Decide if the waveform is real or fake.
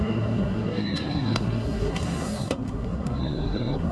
fake